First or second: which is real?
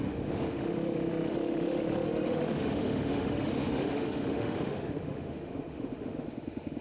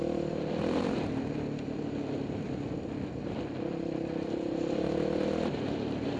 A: second